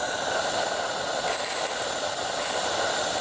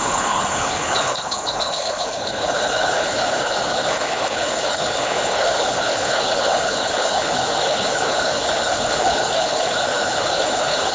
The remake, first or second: second